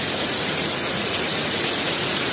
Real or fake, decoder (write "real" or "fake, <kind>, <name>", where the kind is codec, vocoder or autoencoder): fake, vocoder, Vocos